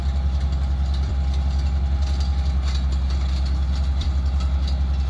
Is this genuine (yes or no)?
no